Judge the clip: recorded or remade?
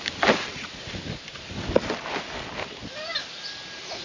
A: recorded